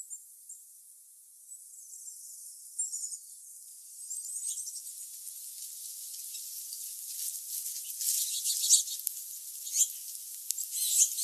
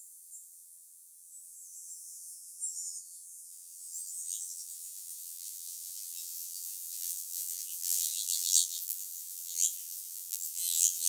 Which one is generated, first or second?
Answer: second